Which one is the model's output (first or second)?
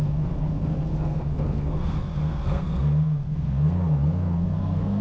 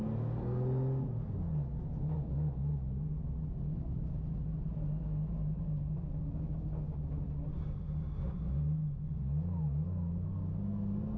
first